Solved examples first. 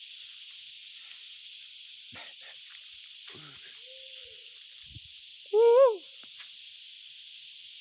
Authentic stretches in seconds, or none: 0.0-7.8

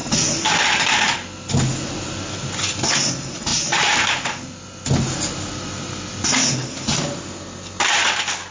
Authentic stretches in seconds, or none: 0.0-8.5

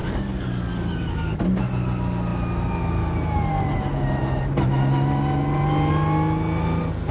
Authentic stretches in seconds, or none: 1.4-7.1